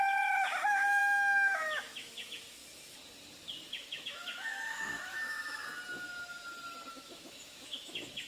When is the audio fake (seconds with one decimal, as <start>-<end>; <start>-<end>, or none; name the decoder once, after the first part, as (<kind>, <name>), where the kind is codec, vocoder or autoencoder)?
0.0-2.6 (autoencoder, DAC-VAE); 3.9-5.6; 6.9-8.3